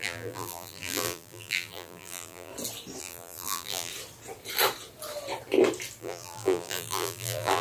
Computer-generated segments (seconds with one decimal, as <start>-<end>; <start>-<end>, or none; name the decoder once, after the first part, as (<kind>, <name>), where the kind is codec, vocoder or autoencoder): 0.0-2.5 (vocoder, BigVGAN v2); 3.0-3.9; 6.0-7.6